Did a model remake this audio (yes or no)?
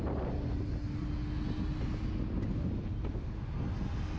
no